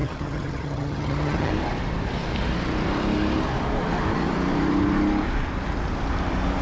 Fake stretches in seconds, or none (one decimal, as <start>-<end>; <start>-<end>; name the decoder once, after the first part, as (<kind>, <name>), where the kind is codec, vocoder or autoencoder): 0.0-1.5 (vocoder, HiFi-GAN)